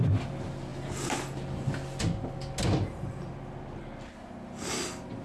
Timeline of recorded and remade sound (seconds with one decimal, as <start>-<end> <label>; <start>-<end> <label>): 0.0-5.2 recorded